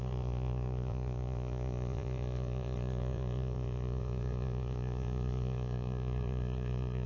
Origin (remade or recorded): remade